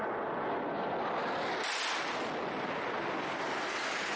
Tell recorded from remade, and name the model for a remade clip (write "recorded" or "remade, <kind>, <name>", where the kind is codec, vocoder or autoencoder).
recorded